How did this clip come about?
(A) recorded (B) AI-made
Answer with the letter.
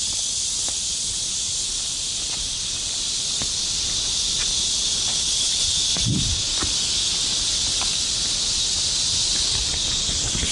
A